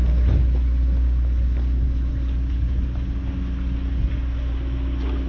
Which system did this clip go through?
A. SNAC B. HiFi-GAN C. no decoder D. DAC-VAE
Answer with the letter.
C